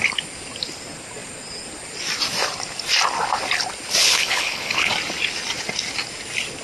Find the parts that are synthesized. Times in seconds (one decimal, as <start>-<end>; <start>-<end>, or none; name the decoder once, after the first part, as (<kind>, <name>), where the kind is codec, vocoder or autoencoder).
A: 4.0-4.9 (codec, HILCodec)